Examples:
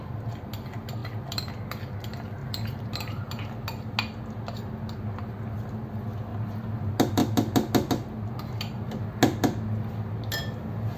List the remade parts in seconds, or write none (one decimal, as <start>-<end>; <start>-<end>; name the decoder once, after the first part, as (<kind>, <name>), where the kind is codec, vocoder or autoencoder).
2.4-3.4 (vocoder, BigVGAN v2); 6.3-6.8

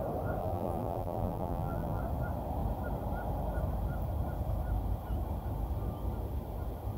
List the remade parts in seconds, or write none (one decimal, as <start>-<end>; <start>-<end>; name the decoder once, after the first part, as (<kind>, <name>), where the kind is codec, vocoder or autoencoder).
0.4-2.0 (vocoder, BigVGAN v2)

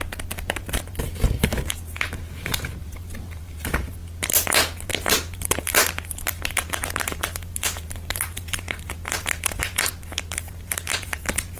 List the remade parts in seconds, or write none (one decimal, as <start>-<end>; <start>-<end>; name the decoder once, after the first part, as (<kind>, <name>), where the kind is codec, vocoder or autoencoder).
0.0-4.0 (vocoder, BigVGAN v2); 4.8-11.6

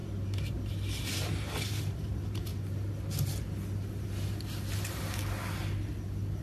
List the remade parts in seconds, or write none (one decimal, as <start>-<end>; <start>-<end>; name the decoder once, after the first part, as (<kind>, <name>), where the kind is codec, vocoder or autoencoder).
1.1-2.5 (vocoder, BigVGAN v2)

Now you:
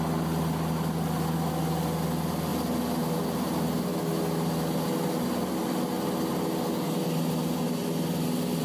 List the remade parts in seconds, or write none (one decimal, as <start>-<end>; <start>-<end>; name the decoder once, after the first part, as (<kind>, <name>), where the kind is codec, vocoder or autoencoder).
none

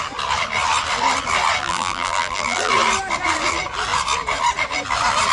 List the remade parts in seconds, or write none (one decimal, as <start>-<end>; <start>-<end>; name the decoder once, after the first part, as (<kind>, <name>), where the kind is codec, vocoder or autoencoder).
1.6-2.7 (vocoder, BigVGAN v2)

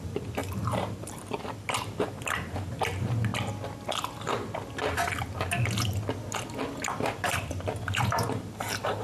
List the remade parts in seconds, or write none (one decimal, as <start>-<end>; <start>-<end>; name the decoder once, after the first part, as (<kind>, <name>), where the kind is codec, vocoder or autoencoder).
0.0-3.3 (vocoder, BigVGAN v2); 6.9-9.0